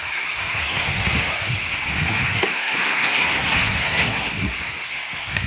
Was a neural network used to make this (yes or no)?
yes